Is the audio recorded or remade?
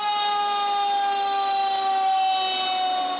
recorded